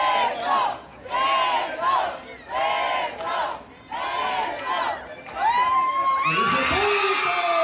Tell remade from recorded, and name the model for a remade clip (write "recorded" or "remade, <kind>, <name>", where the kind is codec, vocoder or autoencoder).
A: recorded